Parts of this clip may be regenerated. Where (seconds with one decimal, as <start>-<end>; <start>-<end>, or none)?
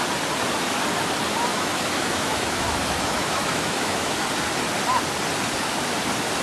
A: 1.5-4.3